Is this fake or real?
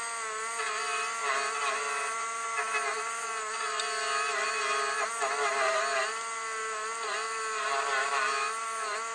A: real